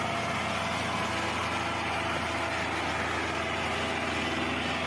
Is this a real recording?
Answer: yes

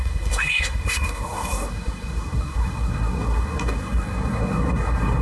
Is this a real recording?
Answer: no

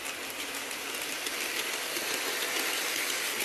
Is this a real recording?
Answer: yes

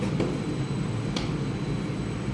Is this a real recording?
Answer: yes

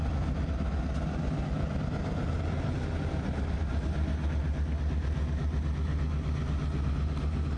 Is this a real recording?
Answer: yes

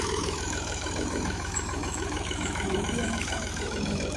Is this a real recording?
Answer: no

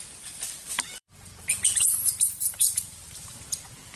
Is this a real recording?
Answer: no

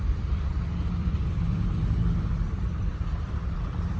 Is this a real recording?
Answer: no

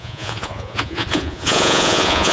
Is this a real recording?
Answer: no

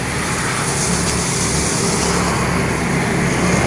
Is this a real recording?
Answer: yes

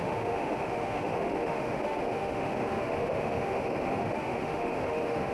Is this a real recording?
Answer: no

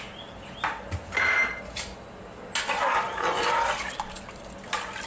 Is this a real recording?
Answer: yes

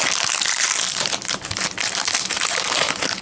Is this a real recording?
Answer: yes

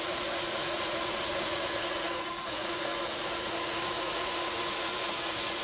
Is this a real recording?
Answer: no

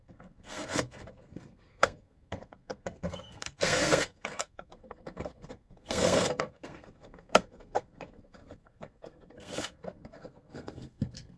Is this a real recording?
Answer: no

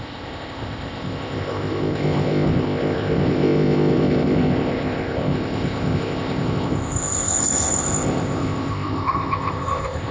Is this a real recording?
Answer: no